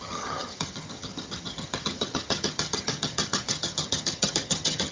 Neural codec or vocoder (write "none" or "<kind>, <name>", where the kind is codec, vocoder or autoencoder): vocoder, HiFi-GAN